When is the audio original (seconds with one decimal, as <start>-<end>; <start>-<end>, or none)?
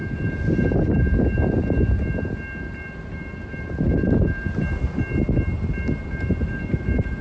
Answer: 0.0-7.2